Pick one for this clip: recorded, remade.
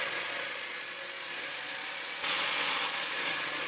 remade